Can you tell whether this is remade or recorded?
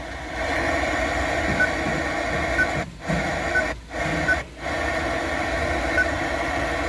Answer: recorded